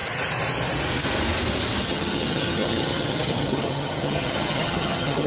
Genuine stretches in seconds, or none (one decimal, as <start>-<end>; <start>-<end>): 0.0-1.8